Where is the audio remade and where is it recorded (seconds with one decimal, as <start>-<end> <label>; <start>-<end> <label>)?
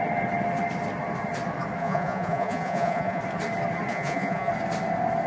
0.0-1.8 recorded; 1.8-3.2 remade; 3.2-3.9 recorded; 3.9-4.5 remade; 4.5-5.3 recorded